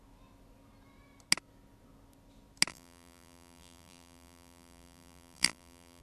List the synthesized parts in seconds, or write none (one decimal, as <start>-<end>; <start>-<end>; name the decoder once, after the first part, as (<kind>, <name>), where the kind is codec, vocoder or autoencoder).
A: 2.7-6.0 (vocoder, BigVGAN v2)